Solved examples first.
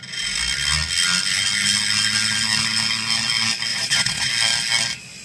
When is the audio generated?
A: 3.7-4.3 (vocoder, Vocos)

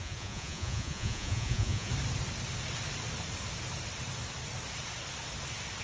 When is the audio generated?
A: 0.0-1.9 (vocoder, Vocos)